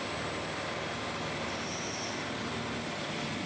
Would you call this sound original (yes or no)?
yes